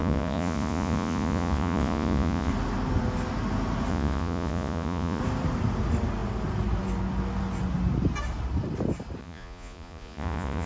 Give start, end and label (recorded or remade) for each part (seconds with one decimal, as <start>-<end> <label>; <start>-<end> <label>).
0.0-2.5 remade; 2.5-3.9 recorded; 3.9-5.2 remade; 5.2-9.2 recorded; 9.2-10.7 remade